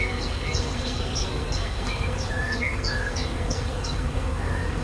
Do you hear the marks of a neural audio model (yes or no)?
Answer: yes